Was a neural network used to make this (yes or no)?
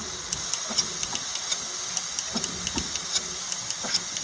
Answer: no